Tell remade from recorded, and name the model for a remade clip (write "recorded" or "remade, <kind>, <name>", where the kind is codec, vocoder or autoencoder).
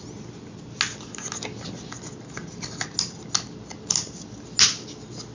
recorded